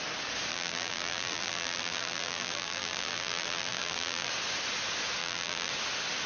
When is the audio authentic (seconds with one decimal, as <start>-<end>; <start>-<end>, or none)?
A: 0.0-0.5; 4.3-5.2; 5.7-6.3